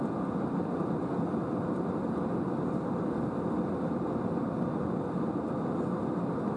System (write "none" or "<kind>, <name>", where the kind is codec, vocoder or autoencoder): vocoder, BigVGAN v2